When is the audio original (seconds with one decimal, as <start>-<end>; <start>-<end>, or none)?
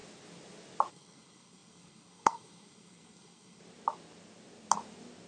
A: 0.0-0.9; 3.6-5.3